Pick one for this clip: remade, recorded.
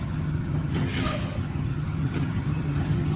remade